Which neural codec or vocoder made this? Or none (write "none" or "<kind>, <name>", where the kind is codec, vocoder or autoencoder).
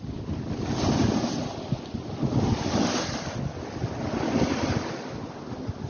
none